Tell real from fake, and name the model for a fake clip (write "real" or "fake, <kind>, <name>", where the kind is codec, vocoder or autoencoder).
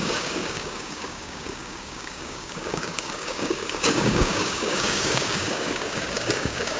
fake, codec, DAC